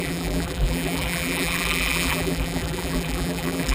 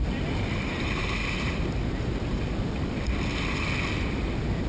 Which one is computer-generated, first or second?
first